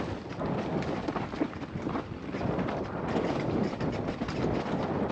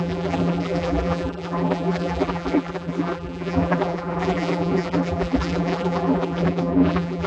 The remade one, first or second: second